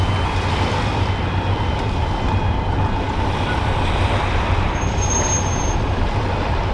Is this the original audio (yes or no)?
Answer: no